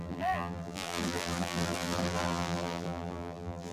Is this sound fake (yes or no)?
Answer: yes